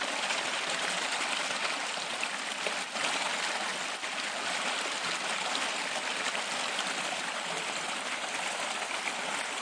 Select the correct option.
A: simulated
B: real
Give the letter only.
B